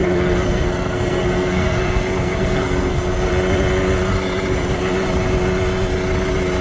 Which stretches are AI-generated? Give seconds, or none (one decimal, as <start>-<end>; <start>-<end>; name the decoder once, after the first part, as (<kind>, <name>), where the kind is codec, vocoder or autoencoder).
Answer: 0.0-3.3 (codec, SNAC)